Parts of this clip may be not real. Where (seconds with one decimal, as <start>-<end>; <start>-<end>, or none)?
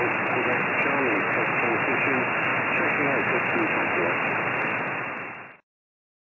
none